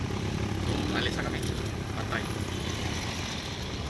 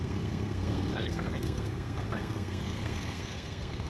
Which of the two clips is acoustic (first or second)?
first